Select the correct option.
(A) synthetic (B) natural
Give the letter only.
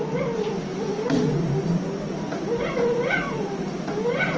B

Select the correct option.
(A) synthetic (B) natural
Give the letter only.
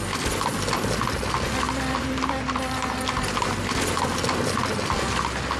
B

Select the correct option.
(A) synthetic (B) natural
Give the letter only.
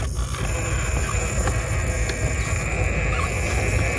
B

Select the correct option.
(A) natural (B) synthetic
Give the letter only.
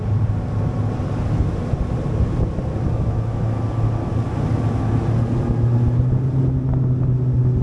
A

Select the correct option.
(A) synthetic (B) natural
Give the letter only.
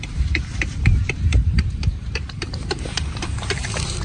A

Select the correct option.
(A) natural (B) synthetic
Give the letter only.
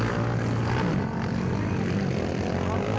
A